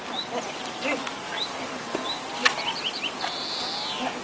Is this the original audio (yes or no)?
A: yes